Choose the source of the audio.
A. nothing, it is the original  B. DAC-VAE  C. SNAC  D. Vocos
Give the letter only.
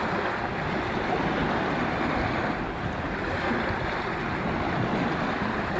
A